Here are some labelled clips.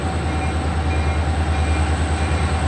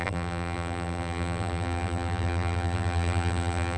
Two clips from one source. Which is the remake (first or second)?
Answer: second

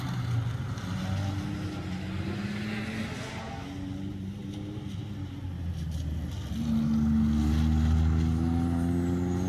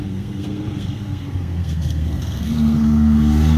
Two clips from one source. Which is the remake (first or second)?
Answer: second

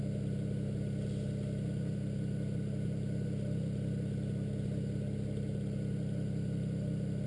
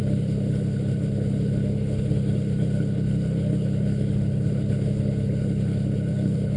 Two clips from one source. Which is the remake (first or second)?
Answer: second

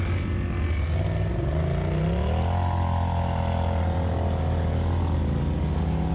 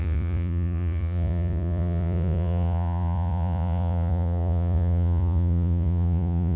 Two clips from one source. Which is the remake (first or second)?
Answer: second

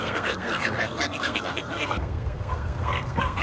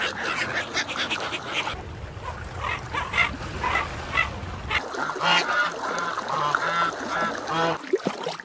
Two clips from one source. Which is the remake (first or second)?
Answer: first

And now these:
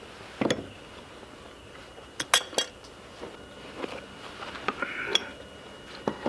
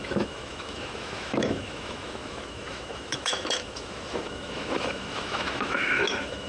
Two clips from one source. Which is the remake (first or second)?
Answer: second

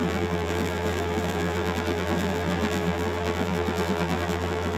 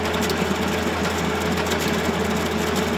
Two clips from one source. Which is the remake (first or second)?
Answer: first